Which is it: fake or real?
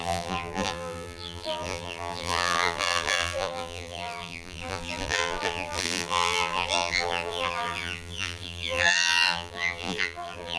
fake